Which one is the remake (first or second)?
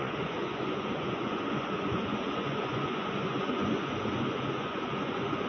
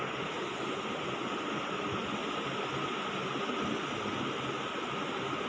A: first